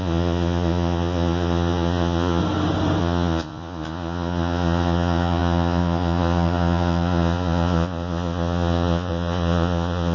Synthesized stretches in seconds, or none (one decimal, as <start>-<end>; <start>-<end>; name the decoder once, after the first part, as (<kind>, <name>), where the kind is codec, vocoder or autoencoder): 0.0-2.4 (vocoder, Vocos); 3.0-10.1